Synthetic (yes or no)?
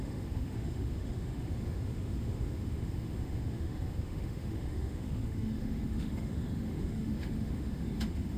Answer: yes